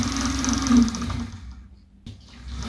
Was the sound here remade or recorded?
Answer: recorded